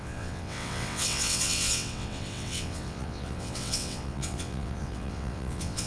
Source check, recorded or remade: remade